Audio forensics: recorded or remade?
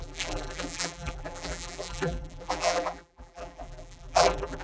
remade